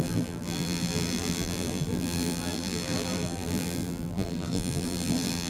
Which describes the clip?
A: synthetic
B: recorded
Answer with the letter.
A